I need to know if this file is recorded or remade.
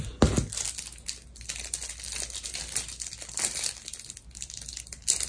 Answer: recorded